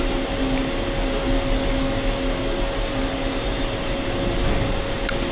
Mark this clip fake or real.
real